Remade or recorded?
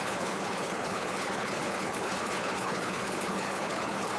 remade